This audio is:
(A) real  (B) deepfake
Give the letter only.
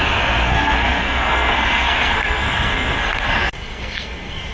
B